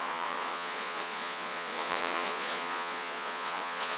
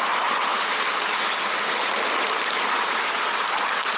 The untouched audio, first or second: second